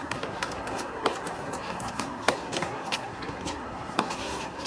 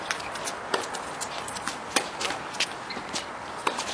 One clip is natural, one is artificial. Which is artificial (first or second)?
first